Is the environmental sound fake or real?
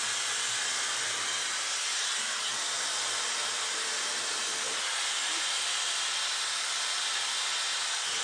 real